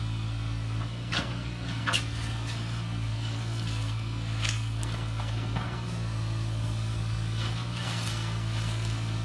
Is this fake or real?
fake